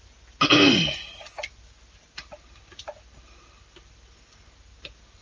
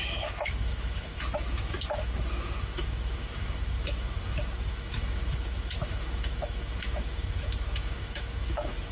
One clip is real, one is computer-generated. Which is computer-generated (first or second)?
second